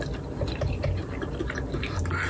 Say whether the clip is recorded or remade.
recorded